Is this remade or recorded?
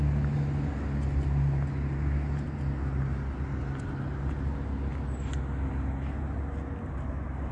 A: recorded